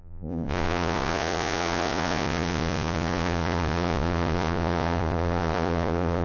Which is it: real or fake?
fake